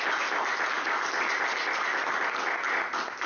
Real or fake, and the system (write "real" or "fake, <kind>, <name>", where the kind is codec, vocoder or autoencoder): real